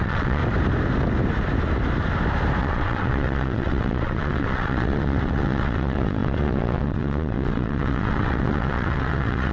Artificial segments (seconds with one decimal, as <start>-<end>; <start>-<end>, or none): 0.0-0.4; 2.6-9.5